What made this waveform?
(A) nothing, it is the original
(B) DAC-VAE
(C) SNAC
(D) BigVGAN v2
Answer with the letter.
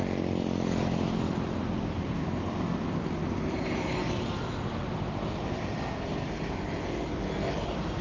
A